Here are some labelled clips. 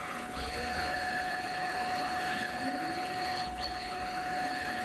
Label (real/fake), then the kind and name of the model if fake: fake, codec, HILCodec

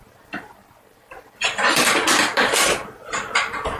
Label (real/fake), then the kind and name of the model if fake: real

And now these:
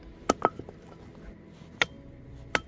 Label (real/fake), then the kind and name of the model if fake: real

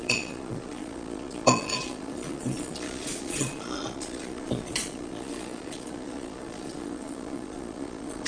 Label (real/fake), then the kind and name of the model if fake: fake, vocoder, Vocos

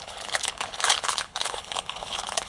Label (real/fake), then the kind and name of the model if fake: fake, codec, HILCodec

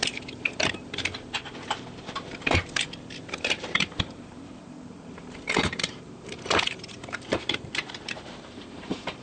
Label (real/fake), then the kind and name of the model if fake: fake, vocoder, BigVGAN v2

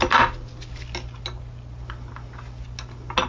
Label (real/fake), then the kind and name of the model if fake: real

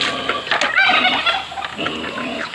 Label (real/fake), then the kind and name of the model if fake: real